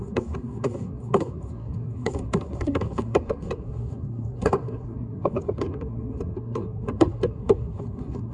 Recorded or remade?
remade